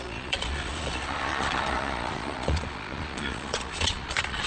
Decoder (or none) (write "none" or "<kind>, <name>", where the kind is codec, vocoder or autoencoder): vocoder, Vocos